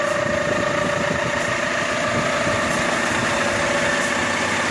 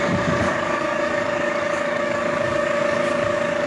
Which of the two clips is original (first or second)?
first